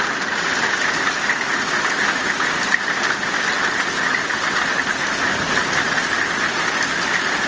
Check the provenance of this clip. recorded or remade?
recorded